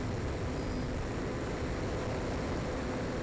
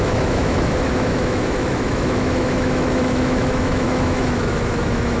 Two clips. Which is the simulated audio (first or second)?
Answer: second